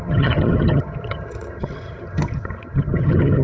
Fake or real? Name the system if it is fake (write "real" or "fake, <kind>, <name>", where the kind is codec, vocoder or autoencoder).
fake, vocoder, HiFi-GAN